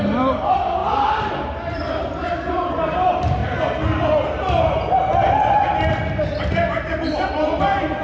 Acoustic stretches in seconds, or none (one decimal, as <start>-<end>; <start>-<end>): 3.4-6.4